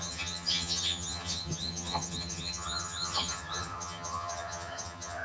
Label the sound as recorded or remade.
remade